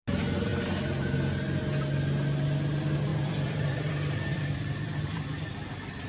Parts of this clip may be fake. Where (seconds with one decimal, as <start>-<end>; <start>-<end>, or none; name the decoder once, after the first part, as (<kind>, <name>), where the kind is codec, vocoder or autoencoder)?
3.1-3.9 (vocoder, BigVGAN v2); 4.3-5.5